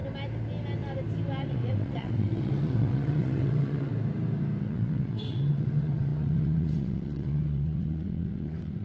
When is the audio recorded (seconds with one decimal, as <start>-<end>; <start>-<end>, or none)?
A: 0.0-1.5; 3.9-4.6